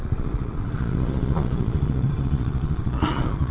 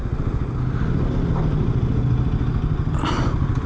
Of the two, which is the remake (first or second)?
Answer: first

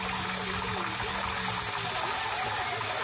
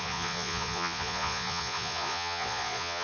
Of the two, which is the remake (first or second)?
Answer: second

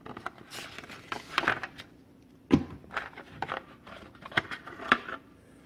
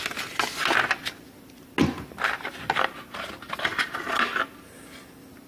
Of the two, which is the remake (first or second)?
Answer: first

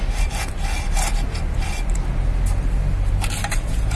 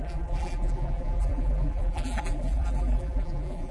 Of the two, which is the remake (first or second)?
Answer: second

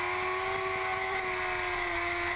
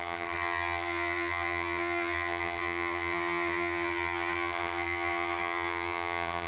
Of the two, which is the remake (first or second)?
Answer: second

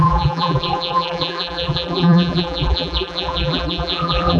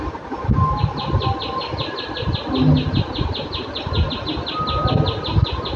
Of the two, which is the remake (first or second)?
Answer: first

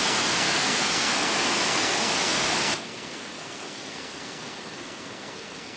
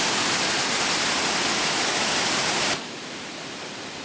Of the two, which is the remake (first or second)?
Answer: first